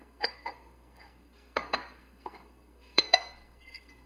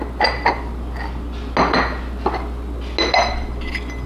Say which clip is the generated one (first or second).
first